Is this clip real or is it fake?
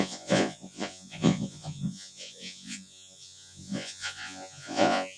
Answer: fake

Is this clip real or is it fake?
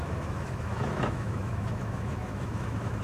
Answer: fake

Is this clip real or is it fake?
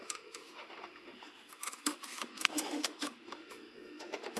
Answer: fake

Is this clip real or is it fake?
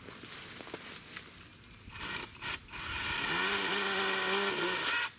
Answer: real